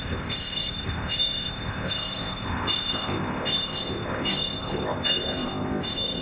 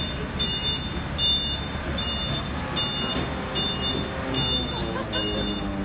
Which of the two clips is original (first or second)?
second